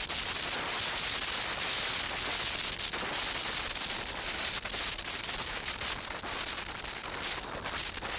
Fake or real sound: real